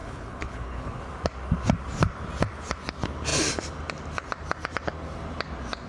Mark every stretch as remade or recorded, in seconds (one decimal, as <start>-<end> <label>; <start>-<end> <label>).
0.0-1.0 remade; 1.0-5.9 recorded